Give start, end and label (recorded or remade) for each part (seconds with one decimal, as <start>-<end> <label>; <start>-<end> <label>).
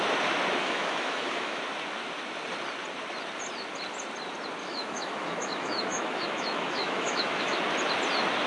0.0-0.6 recorded; 0.6-1.6 remade; 1.6-4.6 recorded; 4.6-7.6 remade; 7.6-8.5 recorded